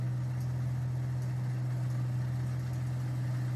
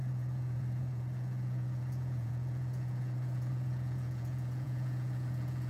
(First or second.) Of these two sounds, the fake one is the second